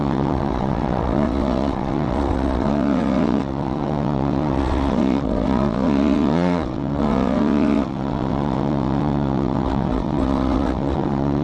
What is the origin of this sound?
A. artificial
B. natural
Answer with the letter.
A